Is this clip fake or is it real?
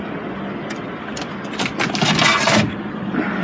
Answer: real